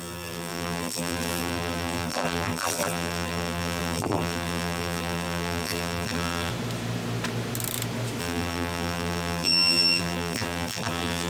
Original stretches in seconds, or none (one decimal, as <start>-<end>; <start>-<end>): 6.5-8.2